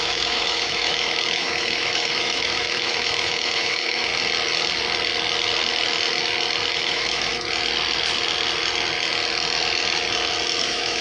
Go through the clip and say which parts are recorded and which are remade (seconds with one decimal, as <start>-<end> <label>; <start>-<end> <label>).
0.0-4.1 remade; 4.1-6.7 recorded; 6.7-7.3 remade; 7.3-10.6 recorded; 10.6-11.0 remade